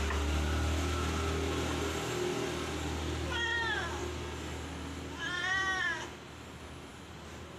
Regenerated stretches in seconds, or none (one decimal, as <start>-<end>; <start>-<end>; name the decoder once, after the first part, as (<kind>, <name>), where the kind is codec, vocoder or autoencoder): none